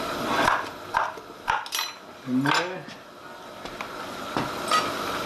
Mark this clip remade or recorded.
recorded